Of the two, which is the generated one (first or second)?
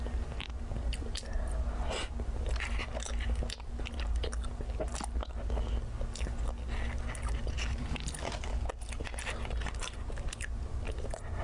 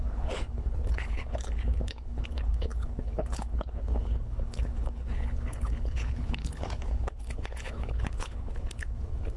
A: second